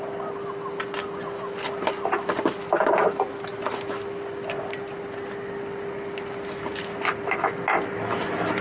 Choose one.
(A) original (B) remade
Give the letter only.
A